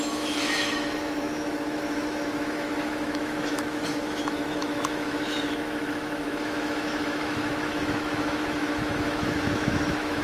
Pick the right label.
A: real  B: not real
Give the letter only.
B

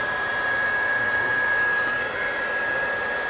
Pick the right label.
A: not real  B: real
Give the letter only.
B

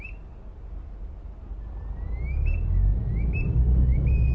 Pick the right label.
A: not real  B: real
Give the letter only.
B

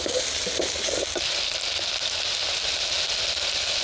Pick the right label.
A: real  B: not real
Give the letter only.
A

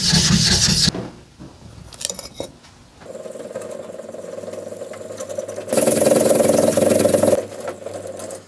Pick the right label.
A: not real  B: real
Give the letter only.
B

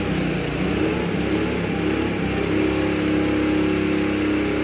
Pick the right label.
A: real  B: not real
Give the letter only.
A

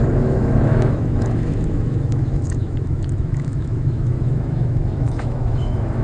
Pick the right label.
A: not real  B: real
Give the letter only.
A